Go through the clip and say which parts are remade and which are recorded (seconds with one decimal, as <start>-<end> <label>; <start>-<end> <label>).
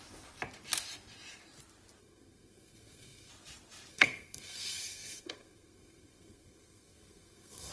0.0-2.0 recorded; 2.0-3.3 remade; 3.3-3.9 recorded; 3.9-7.7 remade